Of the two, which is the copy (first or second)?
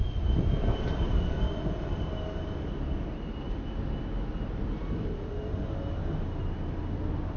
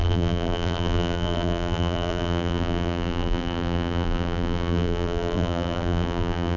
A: second